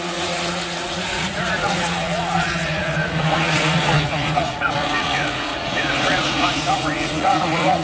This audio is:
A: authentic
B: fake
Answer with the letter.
B